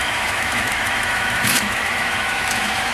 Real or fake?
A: fake